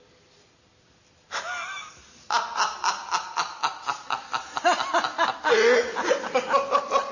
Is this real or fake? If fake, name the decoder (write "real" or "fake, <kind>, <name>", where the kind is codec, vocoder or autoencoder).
real